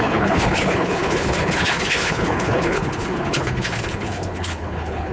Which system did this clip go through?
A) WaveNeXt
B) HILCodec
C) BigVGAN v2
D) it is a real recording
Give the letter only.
B